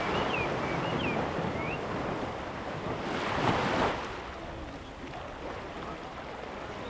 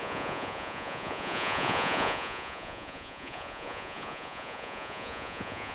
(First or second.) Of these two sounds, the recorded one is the first